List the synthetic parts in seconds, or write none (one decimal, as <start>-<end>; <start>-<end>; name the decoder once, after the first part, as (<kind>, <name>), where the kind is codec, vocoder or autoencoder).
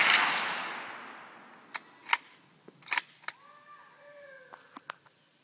none